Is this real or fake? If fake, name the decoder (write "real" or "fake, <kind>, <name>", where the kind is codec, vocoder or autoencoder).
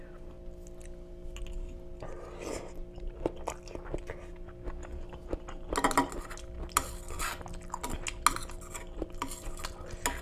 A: real